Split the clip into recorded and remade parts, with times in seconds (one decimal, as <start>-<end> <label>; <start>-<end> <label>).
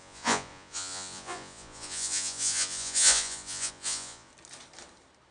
0.0-4.3 remade; 4.3-5.3 recorded